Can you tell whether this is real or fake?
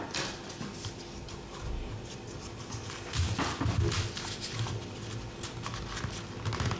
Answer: real